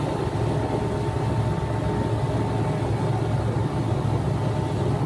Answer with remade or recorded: recorded